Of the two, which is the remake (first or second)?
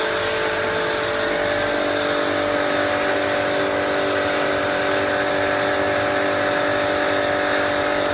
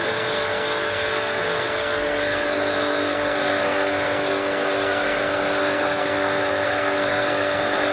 second